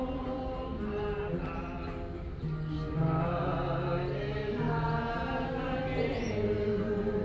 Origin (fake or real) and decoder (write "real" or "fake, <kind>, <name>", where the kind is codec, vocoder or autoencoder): real